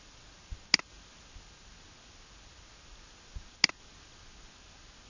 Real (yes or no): yes